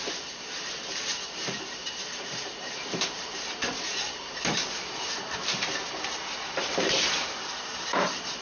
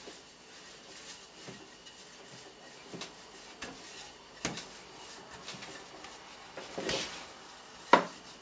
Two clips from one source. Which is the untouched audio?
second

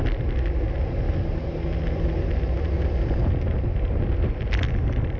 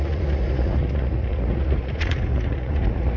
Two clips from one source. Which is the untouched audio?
first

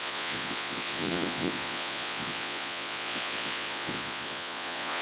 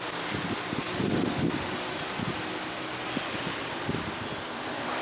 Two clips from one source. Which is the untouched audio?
second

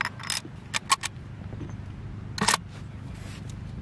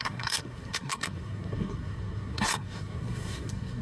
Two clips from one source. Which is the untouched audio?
first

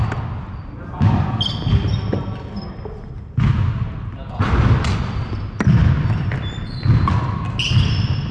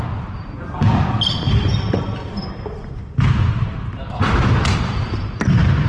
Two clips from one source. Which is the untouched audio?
first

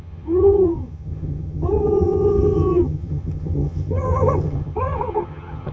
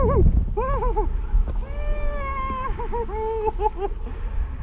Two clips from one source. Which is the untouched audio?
second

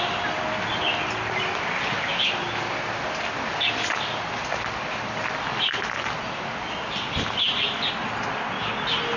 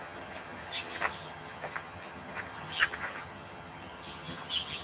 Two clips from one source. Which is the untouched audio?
first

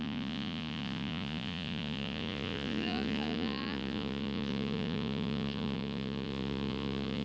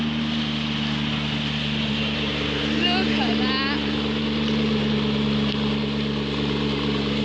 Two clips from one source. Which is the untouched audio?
second